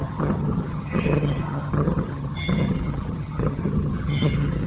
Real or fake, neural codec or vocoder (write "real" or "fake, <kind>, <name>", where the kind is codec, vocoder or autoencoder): fake, vocoder, HiFi-GAN